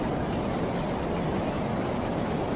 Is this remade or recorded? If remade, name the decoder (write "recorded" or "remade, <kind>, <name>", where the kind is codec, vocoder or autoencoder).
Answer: recorded